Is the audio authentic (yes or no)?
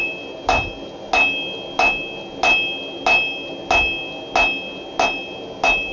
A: yes